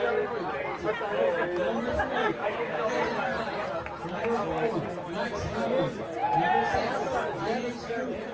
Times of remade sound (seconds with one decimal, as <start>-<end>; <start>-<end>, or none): 2.2-2.9